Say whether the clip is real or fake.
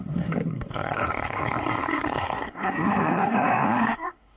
fake